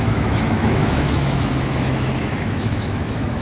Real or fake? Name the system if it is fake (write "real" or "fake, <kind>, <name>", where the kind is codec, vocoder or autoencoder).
fake, autoencoder, DAC-VAE